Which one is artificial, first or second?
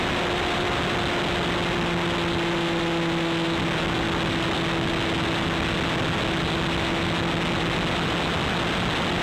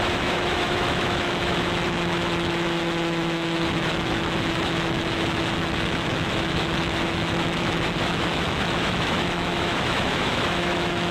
second